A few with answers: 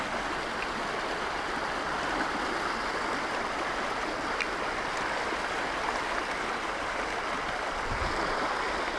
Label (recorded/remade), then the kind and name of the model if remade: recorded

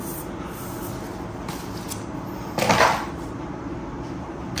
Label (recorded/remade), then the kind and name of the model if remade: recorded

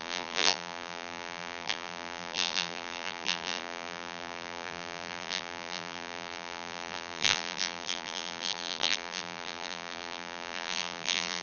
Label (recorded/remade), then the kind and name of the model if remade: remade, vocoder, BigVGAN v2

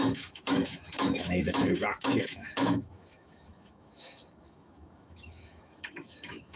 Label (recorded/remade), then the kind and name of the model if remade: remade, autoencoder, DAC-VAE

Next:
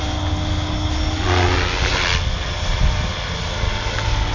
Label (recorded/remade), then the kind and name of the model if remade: recorded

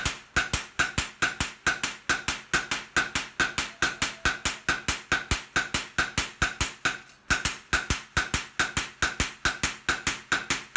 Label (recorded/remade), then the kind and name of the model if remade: recorded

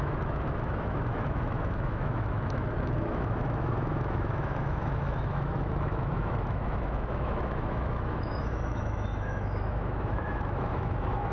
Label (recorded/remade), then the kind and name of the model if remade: remade, autoencoder, DAC-VAE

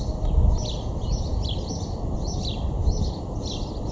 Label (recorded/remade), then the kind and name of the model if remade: recorded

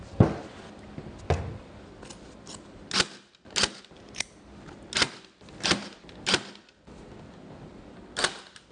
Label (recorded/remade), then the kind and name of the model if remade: recorded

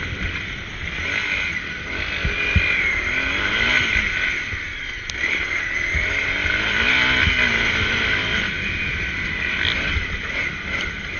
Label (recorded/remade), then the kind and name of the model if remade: recorded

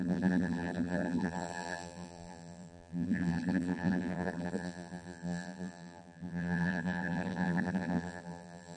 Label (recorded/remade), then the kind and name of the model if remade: remade, vocoder, BigVGAN v2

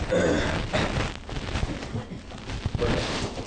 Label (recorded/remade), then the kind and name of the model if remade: recorded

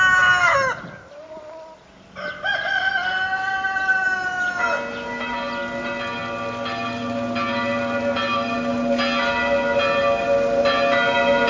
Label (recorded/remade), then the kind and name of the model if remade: recorded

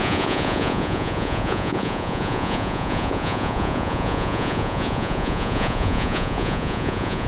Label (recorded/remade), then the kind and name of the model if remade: remade, vocoder, Vocos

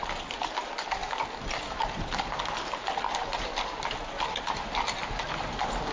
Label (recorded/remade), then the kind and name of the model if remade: recorded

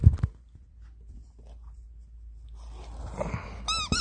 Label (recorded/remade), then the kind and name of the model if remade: recorded